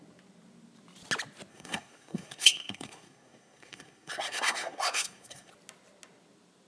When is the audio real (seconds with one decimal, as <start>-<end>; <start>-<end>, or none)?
0.0-1.5; 5.5-6.7